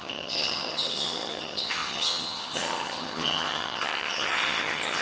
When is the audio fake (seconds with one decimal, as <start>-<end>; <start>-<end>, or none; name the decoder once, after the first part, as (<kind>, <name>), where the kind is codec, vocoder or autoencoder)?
0.0-5.0 (vocoder, HiFi-GAN)